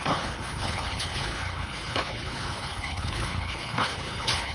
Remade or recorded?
remade